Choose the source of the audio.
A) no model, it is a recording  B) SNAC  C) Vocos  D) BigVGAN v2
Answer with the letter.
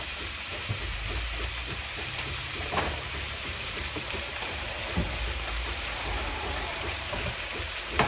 D